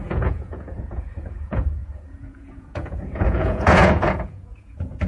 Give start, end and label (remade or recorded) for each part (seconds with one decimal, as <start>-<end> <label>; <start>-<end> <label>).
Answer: 0.0-5.1 remade